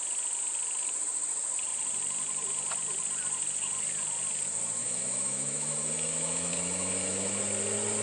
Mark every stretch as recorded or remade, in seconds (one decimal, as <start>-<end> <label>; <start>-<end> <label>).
0.0-4.8 recorded; 4.8-7.4 remade; 7.4-8.0 recorded